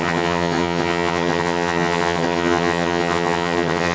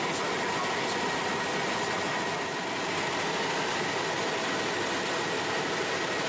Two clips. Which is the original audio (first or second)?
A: second